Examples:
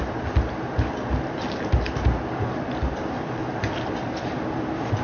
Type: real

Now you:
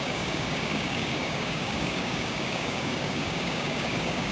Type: fake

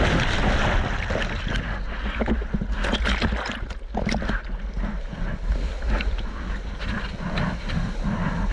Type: real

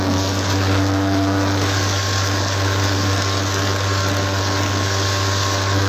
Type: fake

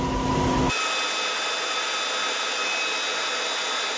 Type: real